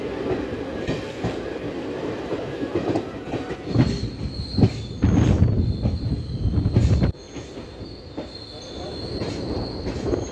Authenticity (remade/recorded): remade